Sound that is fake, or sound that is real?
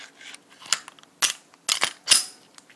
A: real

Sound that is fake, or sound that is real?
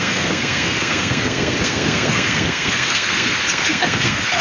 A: fake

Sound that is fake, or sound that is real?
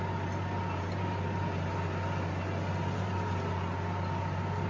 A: real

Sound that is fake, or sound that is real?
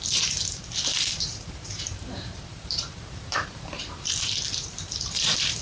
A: fake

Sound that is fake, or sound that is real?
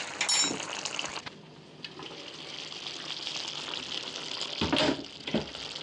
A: real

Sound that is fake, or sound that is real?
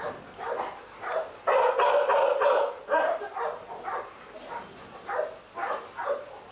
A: real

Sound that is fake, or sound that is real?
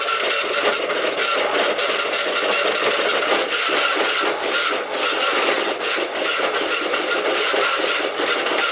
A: real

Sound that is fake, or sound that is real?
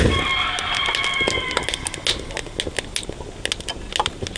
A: real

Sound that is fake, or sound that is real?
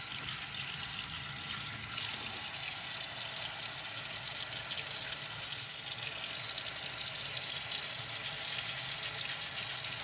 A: real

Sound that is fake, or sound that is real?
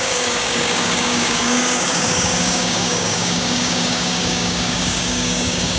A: fake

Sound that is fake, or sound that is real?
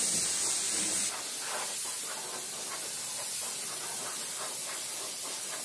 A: real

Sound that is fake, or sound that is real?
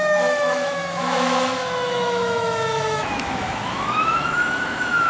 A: fake